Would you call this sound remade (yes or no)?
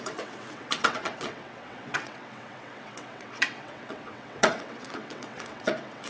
yes